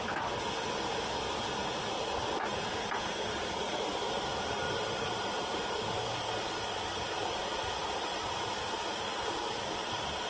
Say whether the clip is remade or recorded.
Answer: recorded